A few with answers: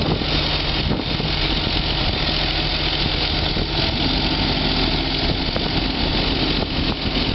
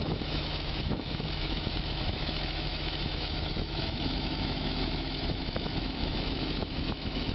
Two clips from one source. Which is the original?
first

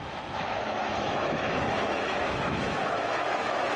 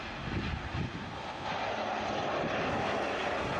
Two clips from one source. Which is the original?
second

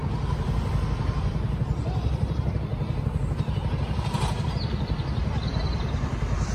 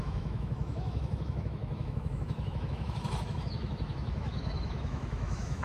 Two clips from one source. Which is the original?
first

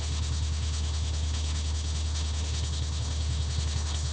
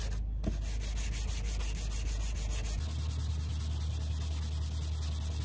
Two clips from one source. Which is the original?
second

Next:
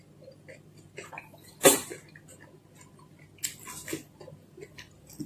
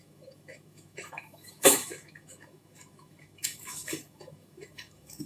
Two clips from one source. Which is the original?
first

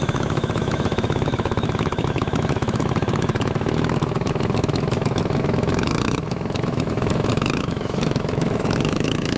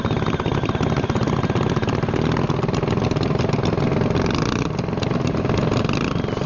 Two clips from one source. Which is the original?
second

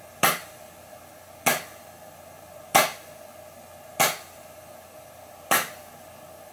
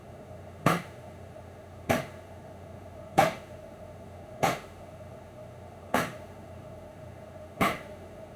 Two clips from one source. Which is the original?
first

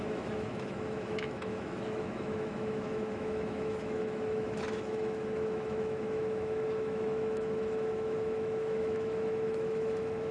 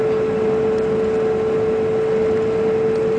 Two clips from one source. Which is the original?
second